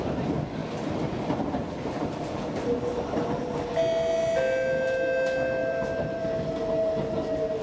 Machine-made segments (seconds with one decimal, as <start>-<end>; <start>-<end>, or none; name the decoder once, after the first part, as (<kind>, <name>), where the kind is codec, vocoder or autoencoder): 0.6-3.7 (vocoder, BigVGAN v2); 5.6-6.2